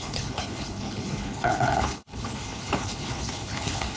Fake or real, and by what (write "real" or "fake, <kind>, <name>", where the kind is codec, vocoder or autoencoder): fake, codec, HILCodec